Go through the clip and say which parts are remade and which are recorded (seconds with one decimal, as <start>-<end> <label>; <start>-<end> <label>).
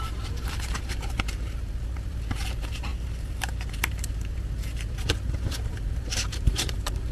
0.0-7.1 remade